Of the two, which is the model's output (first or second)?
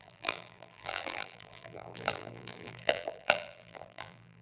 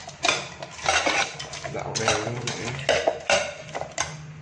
first